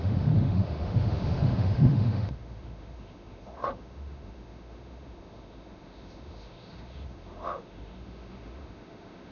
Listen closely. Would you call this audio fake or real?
fake